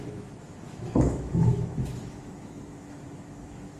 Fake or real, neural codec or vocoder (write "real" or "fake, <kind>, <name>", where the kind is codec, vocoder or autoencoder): fake, autoencoder, DAC-VAE